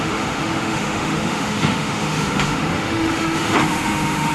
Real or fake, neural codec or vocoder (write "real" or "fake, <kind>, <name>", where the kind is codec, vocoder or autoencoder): fake, autoencoder, DAC-VAE